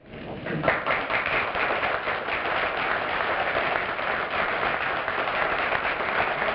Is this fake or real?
real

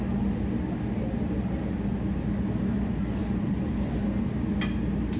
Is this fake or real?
real